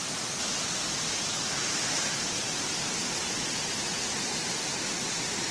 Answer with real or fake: real